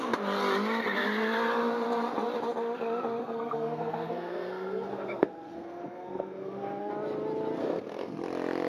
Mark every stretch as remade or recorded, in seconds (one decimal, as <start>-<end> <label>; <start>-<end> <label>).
0.0-3.2 recorded; 3.2-6.9 remade; 6.9-7.6 recorded; 7.6-8.1 remade; 8.1-8.7 recorded